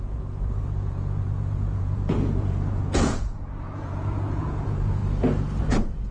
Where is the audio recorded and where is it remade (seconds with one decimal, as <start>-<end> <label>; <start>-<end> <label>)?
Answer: 0.0-5.0 remade; 5.0-5.6 recorded; 5.6-6.1 remade